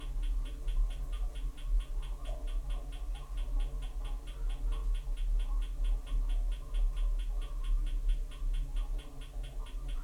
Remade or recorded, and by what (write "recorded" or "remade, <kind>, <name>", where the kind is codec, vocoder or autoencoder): recorded